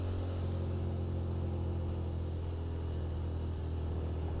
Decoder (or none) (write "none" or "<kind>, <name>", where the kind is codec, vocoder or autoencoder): none